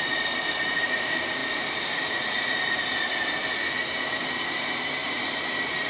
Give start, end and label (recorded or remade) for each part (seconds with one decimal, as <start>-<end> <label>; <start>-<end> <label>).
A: 0.0-3.4 remade; 3.4-4.2 recorded; 4.2-5.9 remade